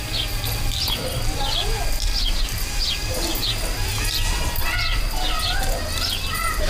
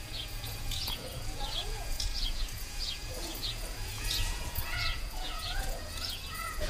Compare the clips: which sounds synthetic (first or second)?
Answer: second